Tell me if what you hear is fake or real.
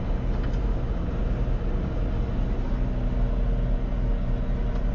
real